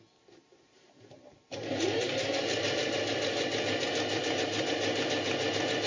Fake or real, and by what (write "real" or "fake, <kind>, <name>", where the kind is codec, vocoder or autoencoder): fake, vocoder, BigVGAN v2